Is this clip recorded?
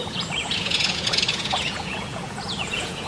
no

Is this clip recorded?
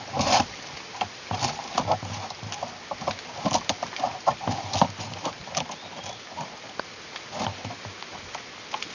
yes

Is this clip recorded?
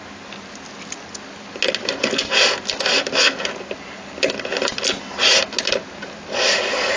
yes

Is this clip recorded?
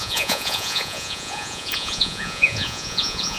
no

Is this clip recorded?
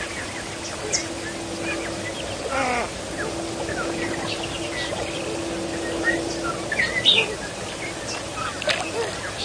yes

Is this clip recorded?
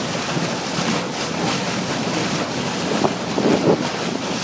yes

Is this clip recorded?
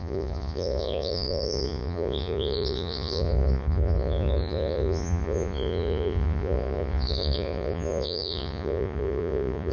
no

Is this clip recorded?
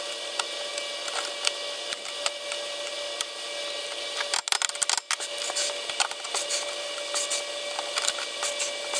yes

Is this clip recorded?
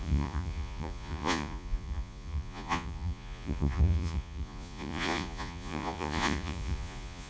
no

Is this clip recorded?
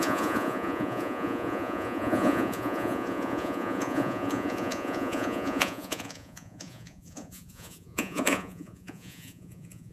no